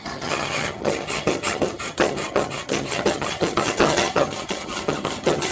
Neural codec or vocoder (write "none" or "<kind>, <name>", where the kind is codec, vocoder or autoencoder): vocoder, HiFi-GAN